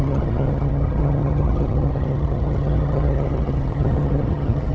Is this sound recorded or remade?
remade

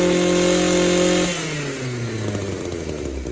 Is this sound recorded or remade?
recorded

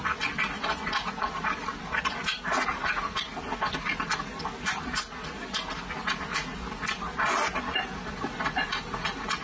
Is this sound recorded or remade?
recorded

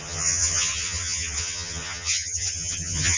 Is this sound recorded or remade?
remade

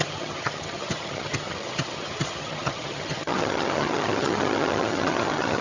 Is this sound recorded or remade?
remade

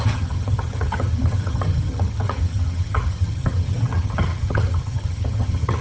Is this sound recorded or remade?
remade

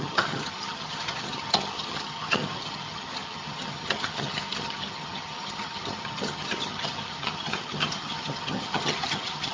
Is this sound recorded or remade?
remade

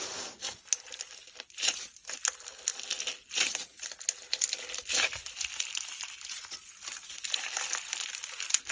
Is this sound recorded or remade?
recorded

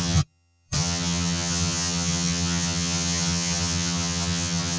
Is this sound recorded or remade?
remade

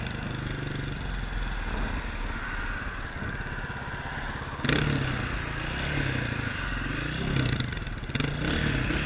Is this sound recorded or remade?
recorded